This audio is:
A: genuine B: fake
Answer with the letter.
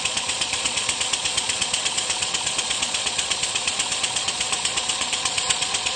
B